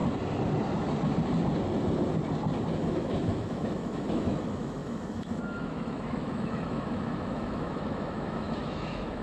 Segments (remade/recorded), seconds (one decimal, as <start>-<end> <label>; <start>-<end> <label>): 0.0-2.9 recorded; 2.9-9.2 remade